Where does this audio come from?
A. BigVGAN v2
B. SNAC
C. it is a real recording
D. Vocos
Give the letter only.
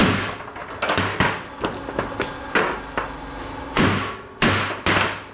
C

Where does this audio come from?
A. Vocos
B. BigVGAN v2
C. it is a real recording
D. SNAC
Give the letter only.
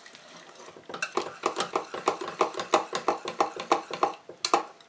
C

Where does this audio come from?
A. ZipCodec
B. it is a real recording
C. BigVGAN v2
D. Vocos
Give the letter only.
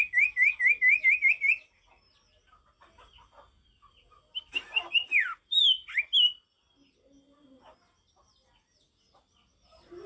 B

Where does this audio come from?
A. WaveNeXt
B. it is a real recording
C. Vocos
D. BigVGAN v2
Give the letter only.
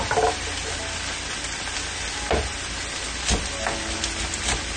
B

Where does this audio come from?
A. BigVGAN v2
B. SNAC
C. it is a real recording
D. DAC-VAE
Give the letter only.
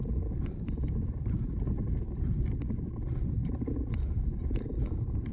A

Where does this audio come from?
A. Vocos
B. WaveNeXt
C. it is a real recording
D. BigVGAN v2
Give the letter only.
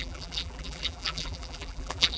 D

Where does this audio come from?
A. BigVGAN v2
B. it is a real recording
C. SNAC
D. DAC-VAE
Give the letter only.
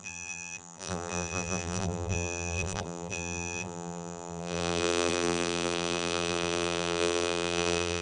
A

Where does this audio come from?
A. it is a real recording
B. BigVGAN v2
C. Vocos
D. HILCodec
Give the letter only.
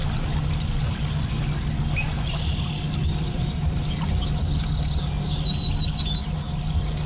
A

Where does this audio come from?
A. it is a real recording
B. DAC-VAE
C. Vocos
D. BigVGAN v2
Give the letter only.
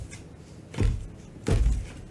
A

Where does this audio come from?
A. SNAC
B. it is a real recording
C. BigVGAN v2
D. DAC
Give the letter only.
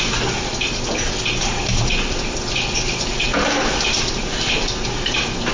B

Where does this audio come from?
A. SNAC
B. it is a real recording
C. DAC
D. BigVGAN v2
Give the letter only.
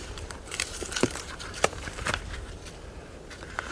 D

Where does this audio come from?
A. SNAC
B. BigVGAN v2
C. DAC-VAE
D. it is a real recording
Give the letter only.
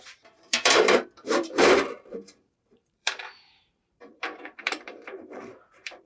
B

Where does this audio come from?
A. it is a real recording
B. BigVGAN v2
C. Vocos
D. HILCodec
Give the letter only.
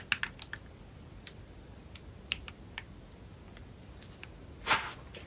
A